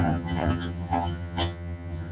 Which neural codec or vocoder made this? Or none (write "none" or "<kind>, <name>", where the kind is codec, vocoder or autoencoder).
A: vocoder, HiFi-GAN